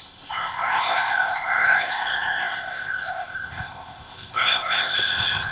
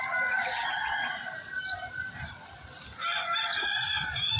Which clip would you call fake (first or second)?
first